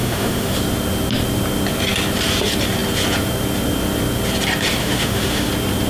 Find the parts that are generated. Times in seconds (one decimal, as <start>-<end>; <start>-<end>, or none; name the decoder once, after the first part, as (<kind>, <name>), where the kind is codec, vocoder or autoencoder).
0.0-0.6 (autoencoder, DAC-VAE); 4.8-5.5